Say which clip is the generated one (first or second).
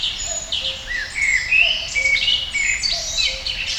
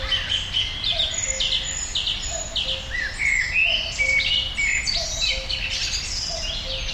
first